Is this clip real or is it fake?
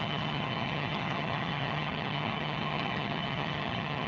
fake